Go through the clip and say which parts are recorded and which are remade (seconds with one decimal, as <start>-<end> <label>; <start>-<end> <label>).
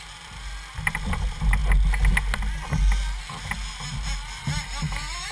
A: 0.0-5.3 recorded